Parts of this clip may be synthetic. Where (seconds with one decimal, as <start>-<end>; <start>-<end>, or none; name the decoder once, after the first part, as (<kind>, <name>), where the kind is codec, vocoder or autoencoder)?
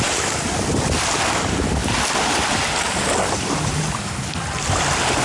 none